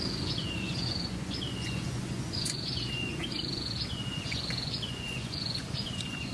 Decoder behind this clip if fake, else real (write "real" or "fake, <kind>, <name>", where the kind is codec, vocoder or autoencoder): fake, vocoder, Vocos